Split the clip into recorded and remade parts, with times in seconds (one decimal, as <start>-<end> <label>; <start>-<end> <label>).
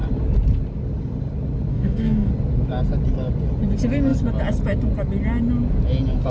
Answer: 0.0-1.7 recorded; 1.7-2.3 remade; 2.3-6.3 recorded